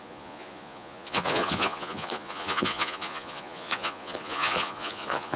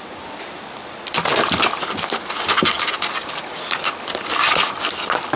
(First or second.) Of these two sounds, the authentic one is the second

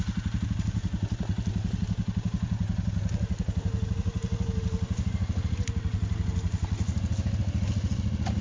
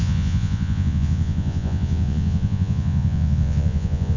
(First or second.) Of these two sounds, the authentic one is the first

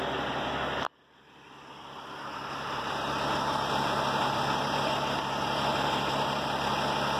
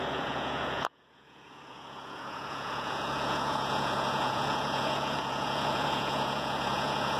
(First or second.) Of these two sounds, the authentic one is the first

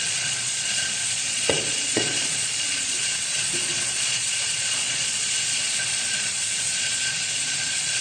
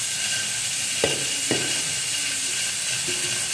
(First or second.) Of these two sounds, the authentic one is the second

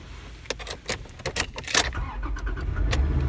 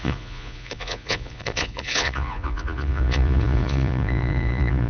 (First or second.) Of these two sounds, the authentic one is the first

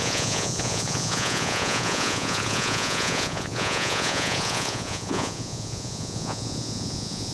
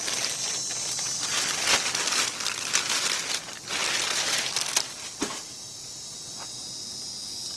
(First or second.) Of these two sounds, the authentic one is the second